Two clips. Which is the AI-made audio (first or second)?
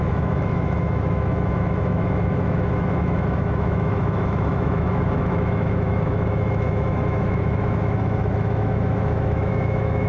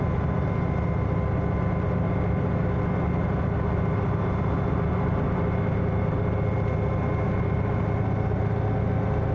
first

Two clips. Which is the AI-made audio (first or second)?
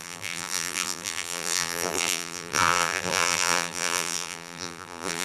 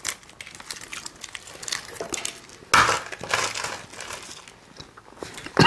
first